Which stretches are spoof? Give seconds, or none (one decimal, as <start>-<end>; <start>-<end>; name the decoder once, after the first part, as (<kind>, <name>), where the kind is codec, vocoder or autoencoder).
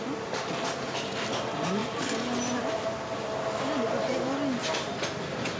none